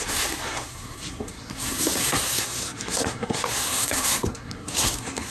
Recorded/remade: remade